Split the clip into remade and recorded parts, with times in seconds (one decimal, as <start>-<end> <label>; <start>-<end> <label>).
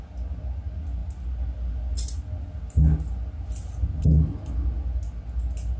0.0-5.8 recorded